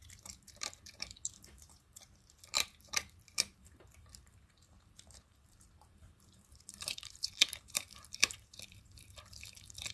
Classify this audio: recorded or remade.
remade